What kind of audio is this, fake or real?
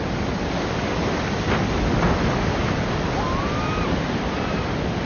real